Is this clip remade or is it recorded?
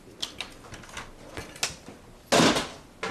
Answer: recorded